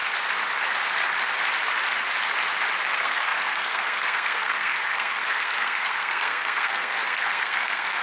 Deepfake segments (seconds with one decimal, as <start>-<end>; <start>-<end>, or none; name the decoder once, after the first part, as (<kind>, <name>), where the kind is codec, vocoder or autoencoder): 2.9-8.0 (codec, SNAC)